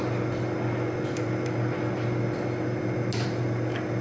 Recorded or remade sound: recorded